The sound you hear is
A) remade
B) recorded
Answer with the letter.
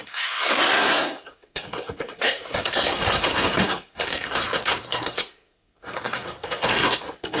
A